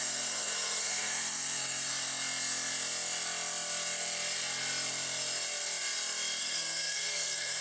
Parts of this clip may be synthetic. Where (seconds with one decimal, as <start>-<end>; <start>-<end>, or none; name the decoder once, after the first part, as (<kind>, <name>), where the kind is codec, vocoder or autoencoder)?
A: 0.0-1.9 (codec, SNAC); 6.4-7.6